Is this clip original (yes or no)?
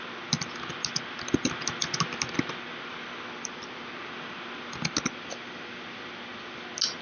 yes